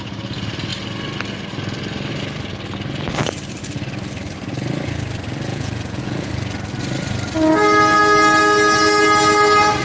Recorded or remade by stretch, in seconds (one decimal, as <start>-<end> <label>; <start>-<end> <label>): 0.0-5.5 recorded; 5.5-6.3 remade; 6.3-9.8 recorded